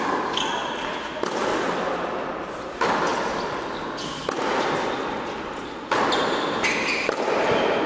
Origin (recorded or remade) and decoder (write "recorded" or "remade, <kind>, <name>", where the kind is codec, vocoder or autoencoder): recorded